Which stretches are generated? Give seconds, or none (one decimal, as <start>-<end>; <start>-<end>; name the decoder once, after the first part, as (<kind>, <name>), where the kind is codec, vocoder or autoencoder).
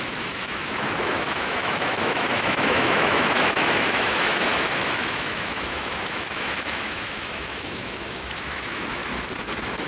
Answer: 0.0-9.0 (autoencoder, DAC-VAE)